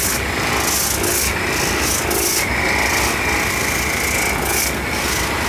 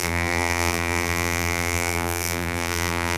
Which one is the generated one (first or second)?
second